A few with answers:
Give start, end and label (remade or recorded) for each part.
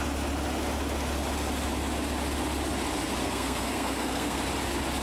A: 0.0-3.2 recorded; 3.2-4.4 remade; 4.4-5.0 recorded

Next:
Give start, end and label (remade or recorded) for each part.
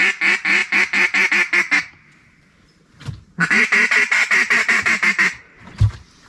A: 0.0-6.3 recorded